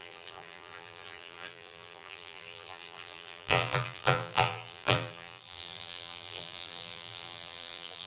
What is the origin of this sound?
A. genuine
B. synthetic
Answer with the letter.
B